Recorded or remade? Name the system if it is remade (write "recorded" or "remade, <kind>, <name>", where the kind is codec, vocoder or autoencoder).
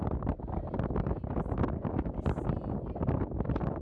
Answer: recorded